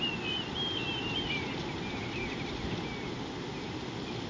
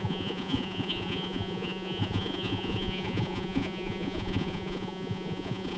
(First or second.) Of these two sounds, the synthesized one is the second